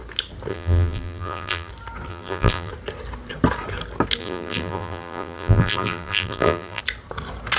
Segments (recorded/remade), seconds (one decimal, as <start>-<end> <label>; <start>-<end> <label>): 0.0-0.5 recorded; 0.5-1.7 remade; 1.7-2.1 recorded; 2.1-2.7 remade; 2.7-4.2 recorded; 4.2-6.8 remade; 6.8-7.6 recorded